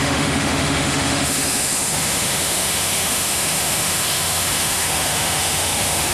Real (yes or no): no